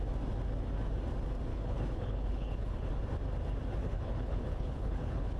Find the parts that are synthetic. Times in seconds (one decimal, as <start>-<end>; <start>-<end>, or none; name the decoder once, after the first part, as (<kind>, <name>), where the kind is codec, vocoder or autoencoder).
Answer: 1.5-2.9 (codec, HILCodec); 3.8-5.4